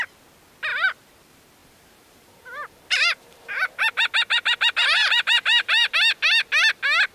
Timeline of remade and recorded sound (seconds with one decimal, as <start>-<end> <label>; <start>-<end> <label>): 0.0-0.7 recorded; 0.7-1.2 remade; 1.2-1.6 recorded; 1.6-5.9 remade; 5.9-7.1 recorded